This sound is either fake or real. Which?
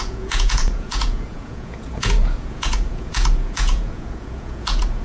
fake